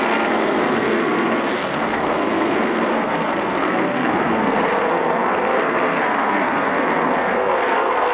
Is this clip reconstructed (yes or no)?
yes